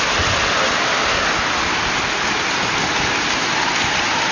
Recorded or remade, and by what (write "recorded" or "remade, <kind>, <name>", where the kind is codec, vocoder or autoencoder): recorded